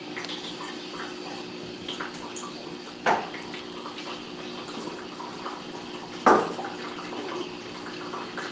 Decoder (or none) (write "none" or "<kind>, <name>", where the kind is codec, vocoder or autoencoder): none